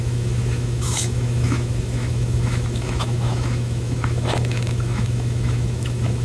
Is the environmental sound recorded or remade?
remade